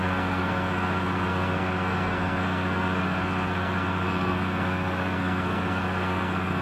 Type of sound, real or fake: fake